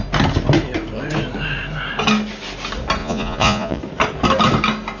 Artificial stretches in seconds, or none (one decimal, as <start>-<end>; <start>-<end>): 3.0-3.8